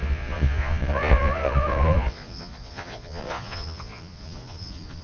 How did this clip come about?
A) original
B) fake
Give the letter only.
B